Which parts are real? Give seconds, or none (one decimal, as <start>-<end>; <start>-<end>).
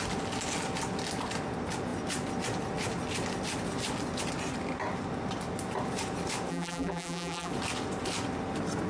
0.0-6.5; 7.5-8.9